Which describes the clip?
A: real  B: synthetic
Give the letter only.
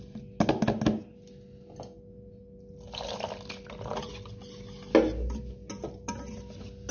A